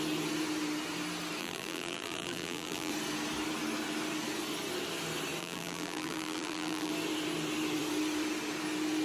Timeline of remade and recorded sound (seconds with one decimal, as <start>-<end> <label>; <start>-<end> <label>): 0.0-1.4 recorded; 1.4-2.9 remade; 2.9-5.4 recorded; 5.4-6.9 remade; 6.9-9.0 recorded